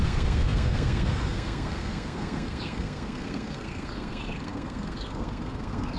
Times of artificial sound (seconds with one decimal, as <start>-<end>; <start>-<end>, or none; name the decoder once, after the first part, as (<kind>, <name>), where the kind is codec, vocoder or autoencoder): 0.0-6.0 (codec, SNAC)